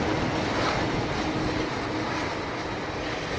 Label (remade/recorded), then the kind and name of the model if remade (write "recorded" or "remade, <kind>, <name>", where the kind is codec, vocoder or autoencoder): recorded